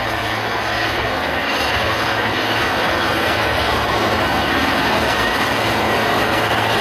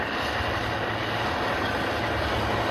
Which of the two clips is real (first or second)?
second